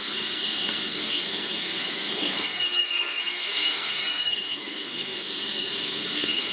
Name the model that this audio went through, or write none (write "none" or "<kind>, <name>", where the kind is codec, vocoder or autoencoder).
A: codec, SNAC